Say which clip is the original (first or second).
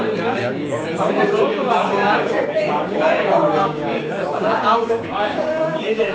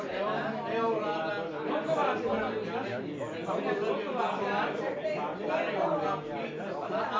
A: second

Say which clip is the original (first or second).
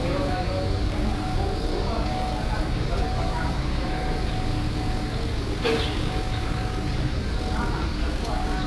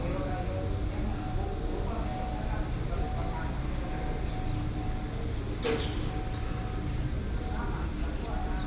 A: second